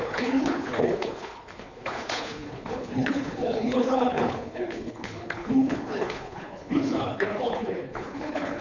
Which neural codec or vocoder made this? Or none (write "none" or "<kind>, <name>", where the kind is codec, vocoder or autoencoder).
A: codec, HILCodec